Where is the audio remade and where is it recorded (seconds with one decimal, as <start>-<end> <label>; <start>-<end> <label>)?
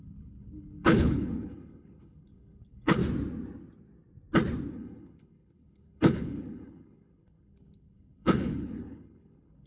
0.0-3.0 remade; 3.0-4.7 recorded; 4.7-9.7 remade